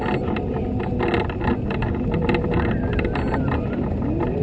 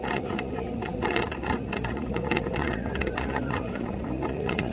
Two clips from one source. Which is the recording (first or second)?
first